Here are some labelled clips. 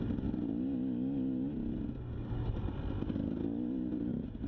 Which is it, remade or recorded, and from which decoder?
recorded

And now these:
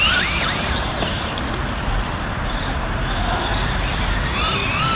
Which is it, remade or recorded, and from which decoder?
remade, vocoder, BigVGAN v2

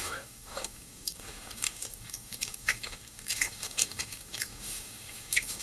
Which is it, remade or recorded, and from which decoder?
remade, codec, DAC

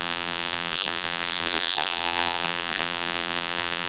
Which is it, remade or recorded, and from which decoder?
remade, vocoder, BigVGAN v2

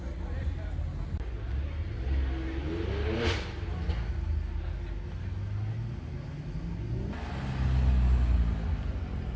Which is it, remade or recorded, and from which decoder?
recorded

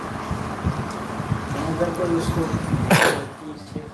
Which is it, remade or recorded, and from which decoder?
recorded